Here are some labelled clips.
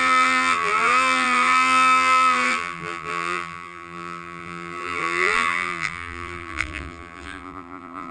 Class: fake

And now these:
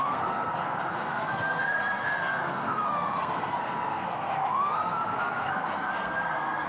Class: fake